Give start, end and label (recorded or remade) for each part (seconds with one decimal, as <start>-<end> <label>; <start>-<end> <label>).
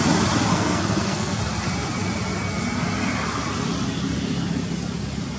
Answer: 0.0-0.5 recorded; 0.5-1.4 remade; 1.4-5.4 recorded